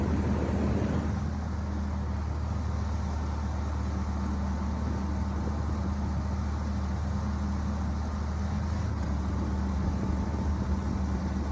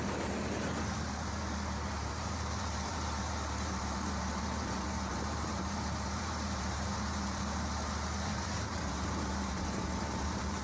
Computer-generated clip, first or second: second